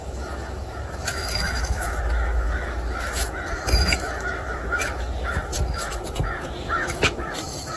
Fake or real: fake